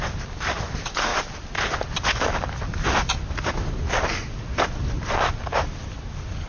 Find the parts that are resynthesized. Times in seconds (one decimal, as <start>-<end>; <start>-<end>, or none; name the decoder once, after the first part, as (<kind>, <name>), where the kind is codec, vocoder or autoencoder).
none